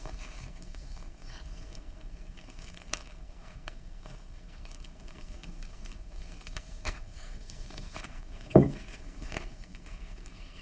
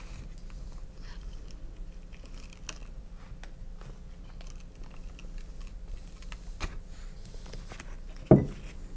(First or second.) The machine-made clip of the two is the first